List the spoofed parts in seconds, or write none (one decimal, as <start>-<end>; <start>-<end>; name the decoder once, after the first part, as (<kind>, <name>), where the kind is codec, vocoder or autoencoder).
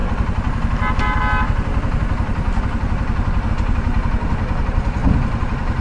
3.5-3.9 (vocoder, BigVGAN v2); 4.6-5.8